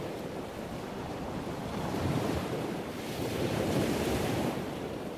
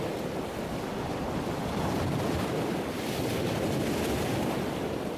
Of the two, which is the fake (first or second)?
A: first